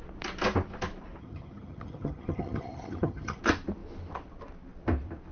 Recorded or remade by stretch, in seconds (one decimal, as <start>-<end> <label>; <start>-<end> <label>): 0.0-1.2 recorded; 1.2-3.4 remade; 3.4-5.3 recorded